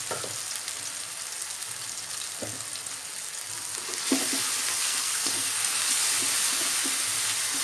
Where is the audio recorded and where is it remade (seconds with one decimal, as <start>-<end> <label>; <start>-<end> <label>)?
0.0-4.8 recorded; 4.8-6.0 remade; 6.0-7.6 recorded